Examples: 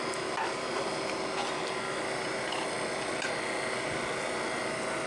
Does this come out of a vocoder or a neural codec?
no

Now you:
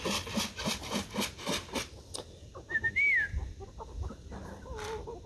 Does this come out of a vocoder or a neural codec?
no